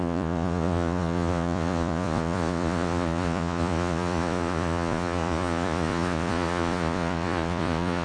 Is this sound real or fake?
fake